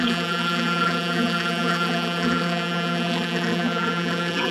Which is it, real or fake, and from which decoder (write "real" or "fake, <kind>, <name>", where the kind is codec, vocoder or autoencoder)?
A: fake, vocoder, BigVGAN v2